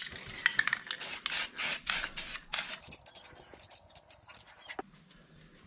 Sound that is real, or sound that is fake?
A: real